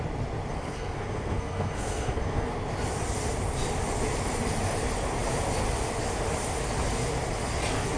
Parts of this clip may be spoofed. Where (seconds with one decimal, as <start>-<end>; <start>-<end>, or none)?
0.5-2.5